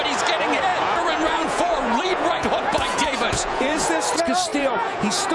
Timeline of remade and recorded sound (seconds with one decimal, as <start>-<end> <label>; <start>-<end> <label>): 0.0-0.7 recorded; 0.7-3.9 remade; 3.9-4.5 recorded; 4.5-5.3 remade

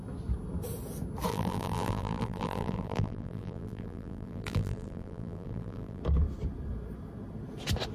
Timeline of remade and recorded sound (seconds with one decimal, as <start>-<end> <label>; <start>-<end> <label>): 0.0-1.3 recorded; 1.3-6.0 remade; 6.0-7.9 recorded